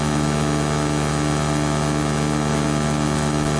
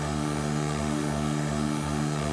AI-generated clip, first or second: second